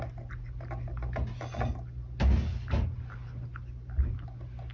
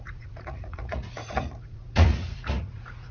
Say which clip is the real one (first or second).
first